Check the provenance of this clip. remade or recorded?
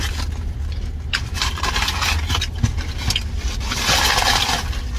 recorded